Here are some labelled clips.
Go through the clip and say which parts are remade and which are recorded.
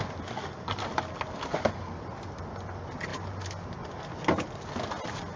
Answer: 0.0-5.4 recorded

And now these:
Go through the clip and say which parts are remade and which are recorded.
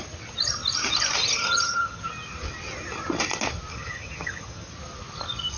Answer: 0.0-1.2 recorded; 1.2-2.0 remade; 2.0-3.7 recorded; 3.7-4.7 remade; 4.7-5.6 recorded